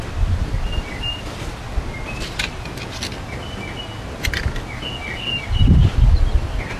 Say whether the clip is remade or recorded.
recorded